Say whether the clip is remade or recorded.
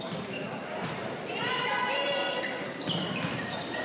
recorded